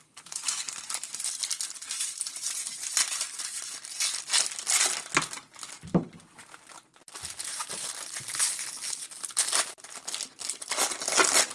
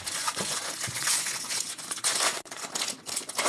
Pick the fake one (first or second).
second